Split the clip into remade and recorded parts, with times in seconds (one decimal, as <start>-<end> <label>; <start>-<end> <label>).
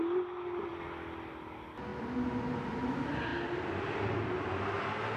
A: 0.0-5.2 recorded